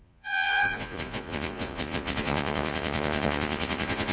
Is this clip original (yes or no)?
no